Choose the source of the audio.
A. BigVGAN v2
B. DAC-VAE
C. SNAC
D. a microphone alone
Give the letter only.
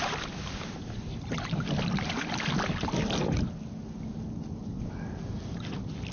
D